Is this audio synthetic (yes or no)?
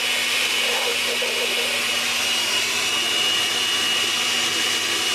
no